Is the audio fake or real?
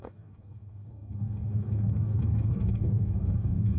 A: fake